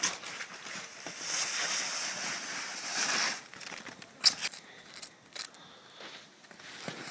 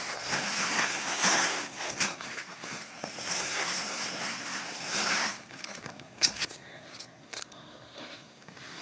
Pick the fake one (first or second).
second